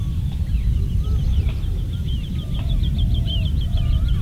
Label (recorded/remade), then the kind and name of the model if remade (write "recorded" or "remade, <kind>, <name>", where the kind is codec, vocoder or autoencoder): remade, vocoder, BigVGAN v2